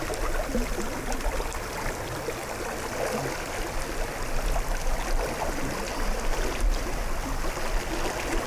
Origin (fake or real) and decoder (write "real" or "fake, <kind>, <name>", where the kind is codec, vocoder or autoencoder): real